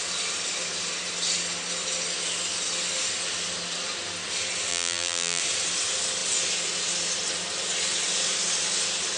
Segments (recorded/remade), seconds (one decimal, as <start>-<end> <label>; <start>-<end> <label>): 0.0-4.7 recorded; 4.7-5.4 remade; 5.4-9.2 recorded